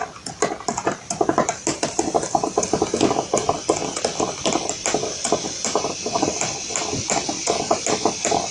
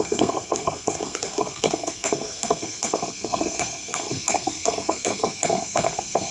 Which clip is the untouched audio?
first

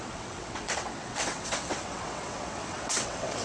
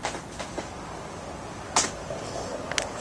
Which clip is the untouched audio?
second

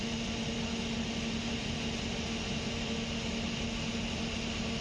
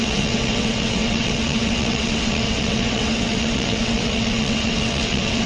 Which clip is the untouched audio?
first